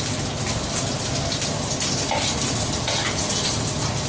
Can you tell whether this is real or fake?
real